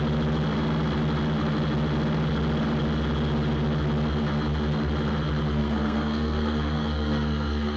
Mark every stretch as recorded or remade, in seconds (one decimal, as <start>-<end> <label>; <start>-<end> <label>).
0.0-5.6 recorded; 5.6-7.8 remade